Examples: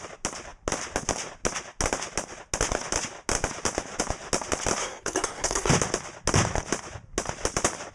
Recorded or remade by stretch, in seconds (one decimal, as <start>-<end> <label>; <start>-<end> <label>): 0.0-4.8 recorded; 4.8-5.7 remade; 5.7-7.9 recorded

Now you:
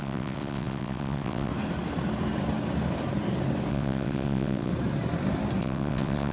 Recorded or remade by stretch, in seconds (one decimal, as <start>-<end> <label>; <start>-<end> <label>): 0.0-1.5 remade; 1.5-3.7 recorded; 3.7-4.7 remade; 4.7-5.6 recorded; 5.6-6.3 remade

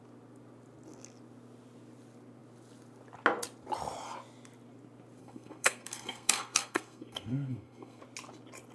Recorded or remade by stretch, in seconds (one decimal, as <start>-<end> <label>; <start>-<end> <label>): 0.0-5.2 recorded; 5.2-8.0 remade; 8.0-8.7 recorded